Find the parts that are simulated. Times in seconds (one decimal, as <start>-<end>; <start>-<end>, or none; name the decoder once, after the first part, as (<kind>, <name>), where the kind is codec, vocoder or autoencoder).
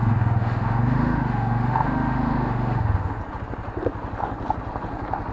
0.0-3.2 (autoencoder, DAC-VAE)